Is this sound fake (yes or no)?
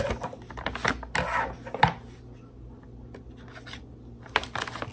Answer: no